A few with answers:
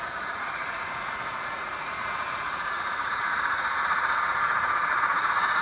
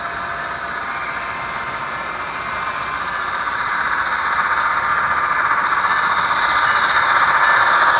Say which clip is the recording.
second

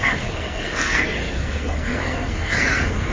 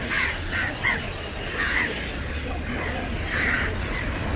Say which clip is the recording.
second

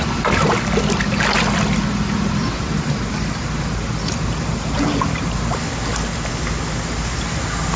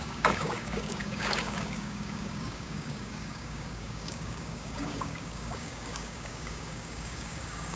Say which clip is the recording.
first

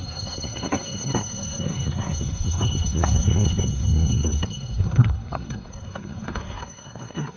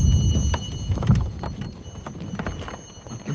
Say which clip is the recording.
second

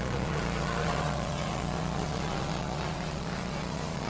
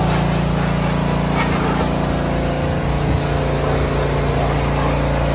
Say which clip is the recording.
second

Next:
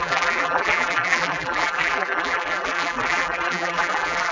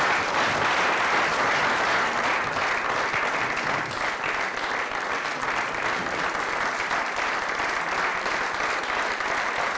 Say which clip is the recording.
second